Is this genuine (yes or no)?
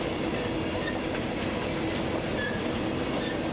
yes